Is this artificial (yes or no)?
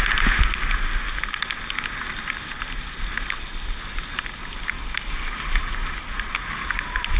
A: no